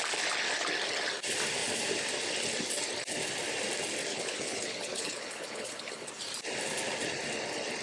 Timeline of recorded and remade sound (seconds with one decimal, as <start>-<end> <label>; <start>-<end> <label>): 0.0-4.1 recorded; 4.1-6.1 remade; 6.1-7.8 recorded